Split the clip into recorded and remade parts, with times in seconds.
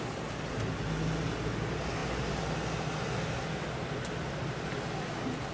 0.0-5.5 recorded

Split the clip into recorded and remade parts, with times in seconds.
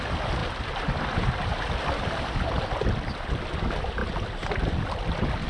0.0-5.5 recorded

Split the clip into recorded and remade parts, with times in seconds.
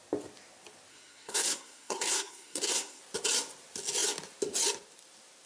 0.0-0.9 recorded; 0.9-3.0 remade; 3.0-5.5 recorded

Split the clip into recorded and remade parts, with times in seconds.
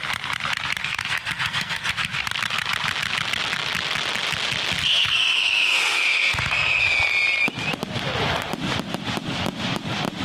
0.0-0.8 recorded; 0.8-1.9 remade; 1.9-4.8 recorded; 4.8-6.8 remade; 6.8-10.2 recorded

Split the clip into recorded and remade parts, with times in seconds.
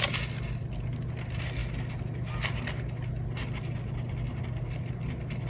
0.0-5.5 recorded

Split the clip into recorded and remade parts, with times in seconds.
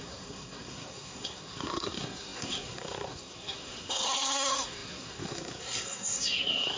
0.0-6.8 remade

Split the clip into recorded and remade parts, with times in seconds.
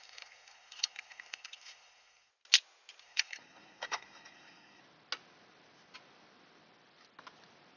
0.0-2.3 remade; 2.3-3.0 recorded; 3.0-4.8 remade; 4.8-7.8 recorded